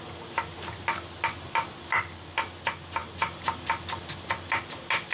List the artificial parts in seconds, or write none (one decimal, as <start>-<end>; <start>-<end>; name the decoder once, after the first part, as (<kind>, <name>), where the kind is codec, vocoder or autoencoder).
none